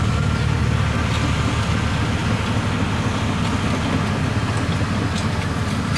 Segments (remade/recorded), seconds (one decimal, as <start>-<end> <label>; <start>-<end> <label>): 0.0-6.0 recorded